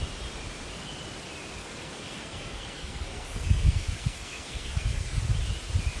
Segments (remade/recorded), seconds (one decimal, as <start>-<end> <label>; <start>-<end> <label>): 0.0-1.6 recorded; 1.6-5.2 remade; 5.2-6.0 recorded